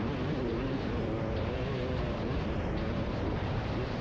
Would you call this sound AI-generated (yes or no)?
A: yes